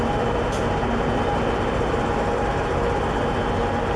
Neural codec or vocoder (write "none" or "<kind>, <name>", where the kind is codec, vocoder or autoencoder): none